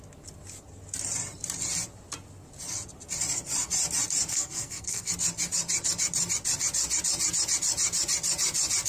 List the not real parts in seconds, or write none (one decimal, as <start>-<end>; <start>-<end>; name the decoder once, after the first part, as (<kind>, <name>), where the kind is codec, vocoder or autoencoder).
4.3-5.1 (codec, SNAC)